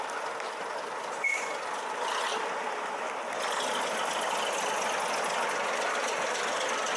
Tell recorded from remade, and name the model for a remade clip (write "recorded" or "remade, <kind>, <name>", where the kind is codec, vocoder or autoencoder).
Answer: recorded